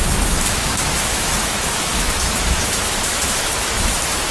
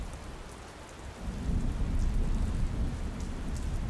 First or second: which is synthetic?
first